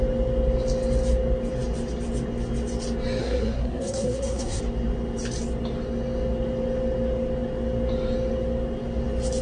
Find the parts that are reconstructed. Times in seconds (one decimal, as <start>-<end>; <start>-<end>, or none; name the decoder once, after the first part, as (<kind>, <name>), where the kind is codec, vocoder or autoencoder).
3.2-4.6 (codec, SNAC)